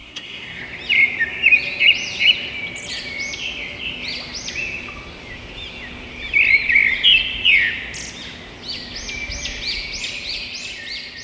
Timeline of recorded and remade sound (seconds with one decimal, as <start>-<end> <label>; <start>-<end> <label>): 0.0-0.6 remade; 0.6-11.2 recorded

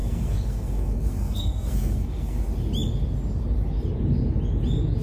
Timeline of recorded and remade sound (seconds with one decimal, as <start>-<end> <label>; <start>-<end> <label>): 0.0-2.4 remade; 2.4-5.0 recorded

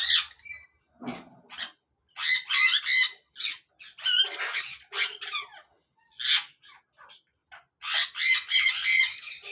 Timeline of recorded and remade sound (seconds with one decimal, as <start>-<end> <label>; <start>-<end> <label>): 0.0-9.5 recorded

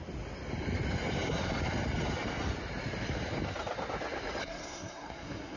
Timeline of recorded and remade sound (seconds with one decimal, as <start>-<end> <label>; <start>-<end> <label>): 0.0-4.4 recorded; 4.4-5.6 remade

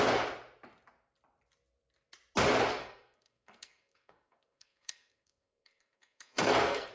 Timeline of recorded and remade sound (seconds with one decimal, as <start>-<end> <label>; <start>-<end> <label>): 0.0-2.8 recorded; 2.8-6.9 remade

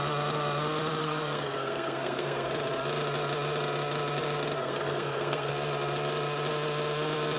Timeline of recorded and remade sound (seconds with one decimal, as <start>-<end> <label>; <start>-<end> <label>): 0.0-1.0 recorded; 1.0-2.5 remade; 2.5-4.6 recorded; 4.6-5.5 remade; 5.5-7.4 recorded